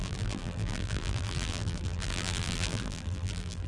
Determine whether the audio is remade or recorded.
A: remade